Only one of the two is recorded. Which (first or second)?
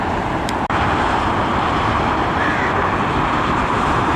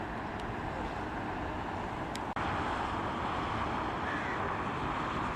second